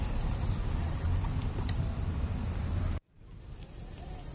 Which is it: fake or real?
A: real